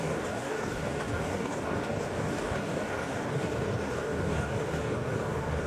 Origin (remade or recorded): remade